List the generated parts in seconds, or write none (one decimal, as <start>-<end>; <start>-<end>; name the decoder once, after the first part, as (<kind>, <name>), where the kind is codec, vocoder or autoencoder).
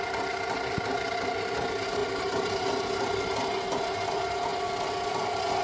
none